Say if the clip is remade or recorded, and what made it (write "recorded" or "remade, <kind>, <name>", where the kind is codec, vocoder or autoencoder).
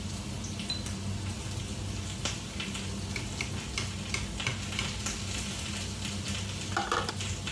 recorded